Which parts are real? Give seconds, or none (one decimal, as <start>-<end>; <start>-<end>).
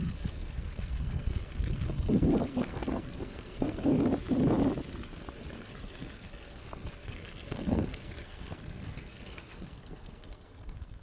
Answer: 3.9-5.5